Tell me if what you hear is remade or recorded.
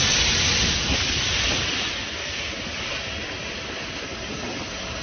recorded